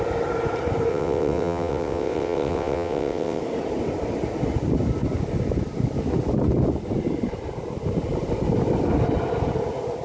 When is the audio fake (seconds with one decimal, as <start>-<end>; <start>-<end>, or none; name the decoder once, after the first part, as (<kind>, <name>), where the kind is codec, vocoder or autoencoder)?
0.9-3.4 (vocoder, WaveNeXt)